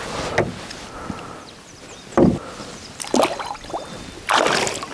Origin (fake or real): real